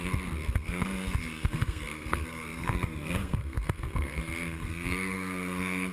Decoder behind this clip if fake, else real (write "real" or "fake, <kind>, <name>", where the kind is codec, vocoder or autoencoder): fake, codec, SNAC